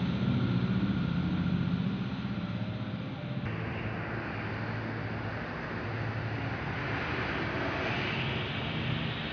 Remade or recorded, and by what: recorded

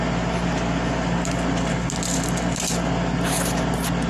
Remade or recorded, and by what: recorded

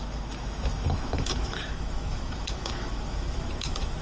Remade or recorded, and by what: remade, autoencoder, DAC-VAE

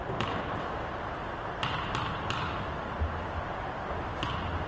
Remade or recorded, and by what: recorded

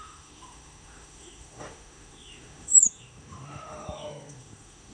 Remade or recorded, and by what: remade, autoencoder, DAC-VAE